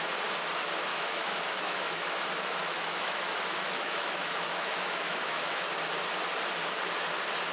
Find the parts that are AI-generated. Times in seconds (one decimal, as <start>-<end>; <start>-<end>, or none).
0.9-2.2; 2.6-5.7